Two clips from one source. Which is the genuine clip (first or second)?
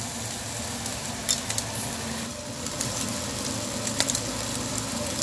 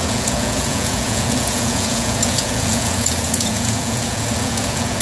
first